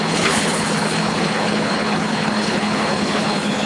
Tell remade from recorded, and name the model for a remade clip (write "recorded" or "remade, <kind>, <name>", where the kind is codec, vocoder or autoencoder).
remade, codec, HILCodec